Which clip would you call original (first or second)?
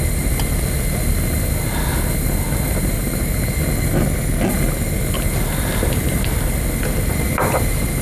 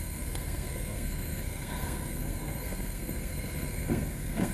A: first